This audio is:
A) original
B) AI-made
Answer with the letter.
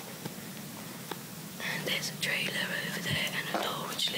A